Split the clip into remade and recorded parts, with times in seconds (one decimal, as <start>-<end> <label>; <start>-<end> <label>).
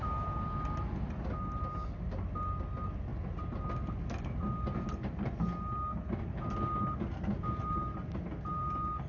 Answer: 0.0-9.1 recorded